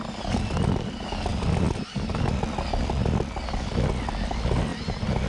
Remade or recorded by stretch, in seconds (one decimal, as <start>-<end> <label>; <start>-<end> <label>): 0.0-5.3 recorded